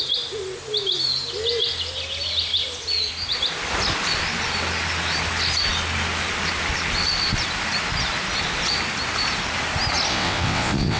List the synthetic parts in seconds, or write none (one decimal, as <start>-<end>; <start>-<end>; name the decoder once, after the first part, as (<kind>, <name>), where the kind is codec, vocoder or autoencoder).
10.1-11.0 (vocoder, WaveNeXt)